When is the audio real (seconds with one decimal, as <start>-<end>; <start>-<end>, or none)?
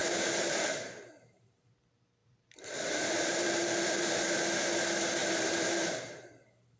1.7-2.2; 4.4-5.2